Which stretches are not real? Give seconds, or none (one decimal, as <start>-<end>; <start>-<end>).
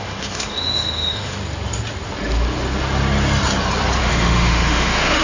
0.0-1.4; 4.0-5.2